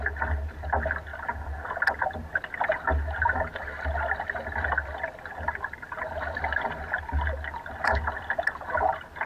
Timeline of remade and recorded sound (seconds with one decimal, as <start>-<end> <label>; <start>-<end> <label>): 0.0-9.3 recorded